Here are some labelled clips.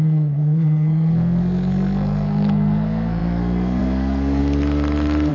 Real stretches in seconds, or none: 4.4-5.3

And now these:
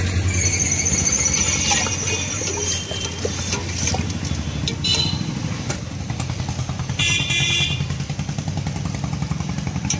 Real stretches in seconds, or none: 0.0-4.9; 6.4-10.0

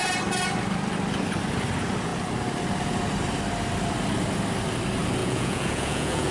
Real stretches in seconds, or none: 0.0-5.2

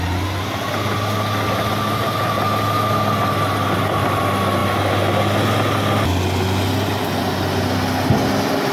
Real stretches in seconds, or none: 0.0-8.7

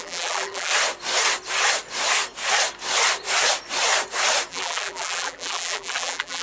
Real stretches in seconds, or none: 0.7-4.5

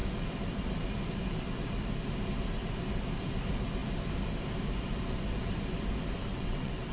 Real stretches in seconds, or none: 0.0-6.3